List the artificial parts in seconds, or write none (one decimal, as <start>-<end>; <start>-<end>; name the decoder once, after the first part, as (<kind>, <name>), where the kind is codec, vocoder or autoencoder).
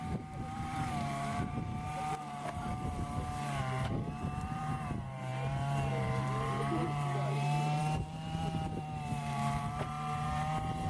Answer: 0.0-10.9 (vocoder, BigVGAN v2)